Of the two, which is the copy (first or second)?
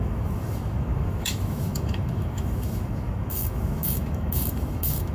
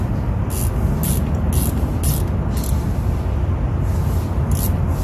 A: first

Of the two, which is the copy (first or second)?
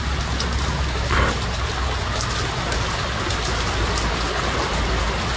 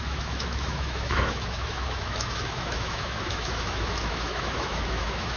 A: second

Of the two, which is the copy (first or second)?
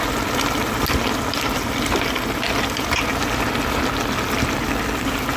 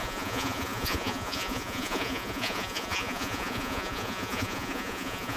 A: second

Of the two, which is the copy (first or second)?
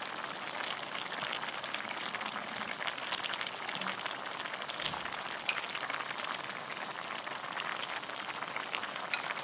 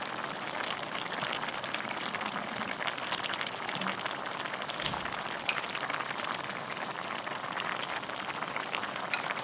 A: second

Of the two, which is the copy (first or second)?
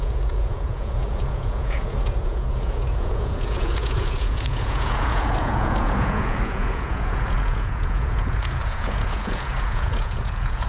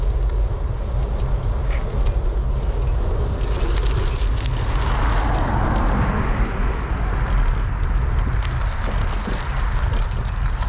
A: first